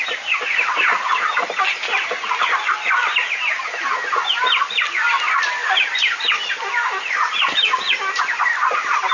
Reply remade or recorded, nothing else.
recorded